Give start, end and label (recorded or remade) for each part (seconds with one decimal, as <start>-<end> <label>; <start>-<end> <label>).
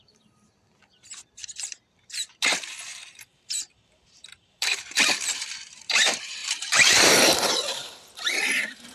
0.0-8.9 remade